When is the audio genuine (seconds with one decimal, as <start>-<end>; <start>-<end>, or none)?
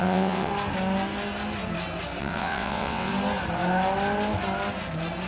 0.5-2.2; 3.1-5.3